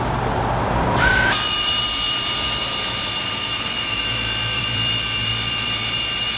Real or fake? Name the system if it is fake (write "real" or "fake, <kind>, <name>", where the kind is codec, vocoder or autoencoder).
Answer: fake, vocoder, BigVGAN v2